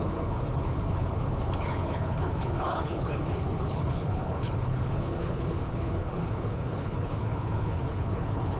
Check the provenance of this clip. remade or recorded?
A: remade